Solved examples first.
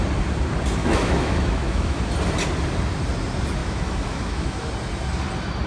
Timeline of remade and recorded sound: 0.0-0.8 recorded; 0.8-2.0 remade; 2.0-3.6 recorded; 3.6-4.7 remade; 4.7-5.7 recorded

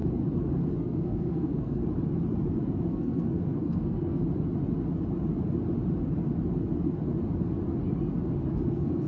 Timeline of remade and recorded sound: 0.0-0.7 recorded; 0.7-1.8 remade; 1.8-2.9 recorded; 2.9-4.2 remade; 4.2-8.5 recorded; 8.5-9.1 remade